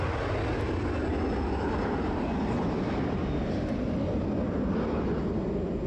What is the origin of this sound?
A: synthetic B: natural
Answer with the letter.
B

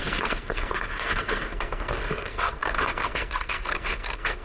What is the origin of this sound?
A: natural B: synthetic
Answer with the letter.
B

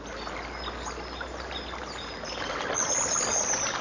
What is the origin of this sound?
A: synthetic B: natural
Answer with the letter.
B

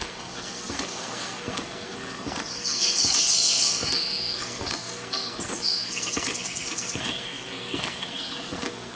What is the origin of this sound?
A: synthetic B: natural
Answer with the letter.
A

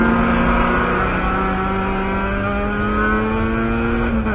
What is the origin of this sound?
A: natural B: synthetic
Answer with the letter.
A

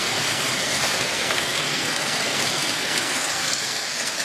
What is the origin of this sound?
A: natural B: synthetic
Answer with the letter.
B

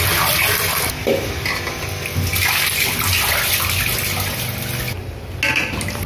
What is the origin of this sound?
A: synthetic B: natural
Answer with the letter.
B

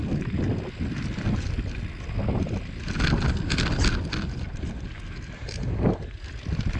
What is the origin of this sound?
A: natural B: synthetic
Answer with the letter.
A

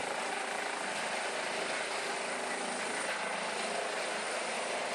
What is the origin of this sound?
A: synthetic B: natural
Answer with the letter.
B